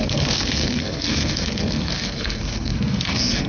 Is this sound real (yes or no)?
no